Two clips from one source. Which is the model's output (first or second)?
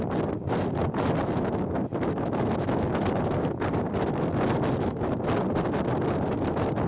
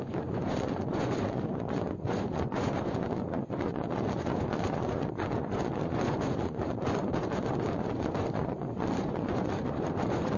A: second